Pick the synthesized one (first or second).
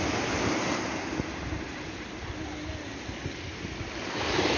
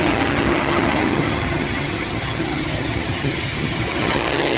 second